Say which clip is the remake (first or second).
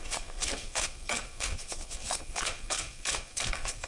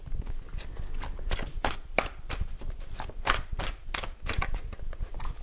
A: first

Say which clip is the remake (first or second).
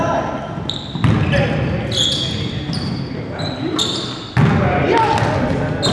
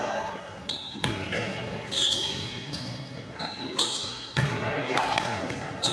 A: second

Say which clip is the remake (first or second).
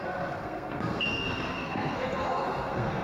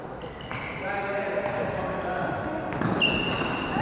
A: first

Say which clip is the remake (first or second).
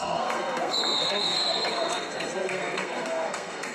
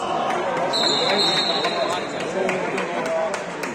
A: first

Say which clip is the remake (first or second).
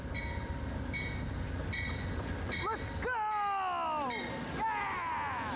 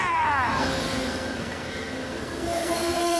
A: second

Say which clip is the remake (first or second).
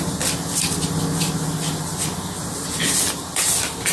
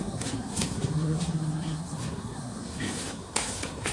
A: second